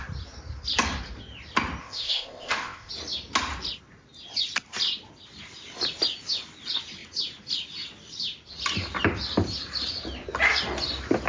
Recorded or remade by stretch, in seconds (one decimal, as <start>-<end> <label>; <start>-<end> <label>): 0.0-1.8 recorded; 1.8-2.9 remade; 2.9-11.3 recorded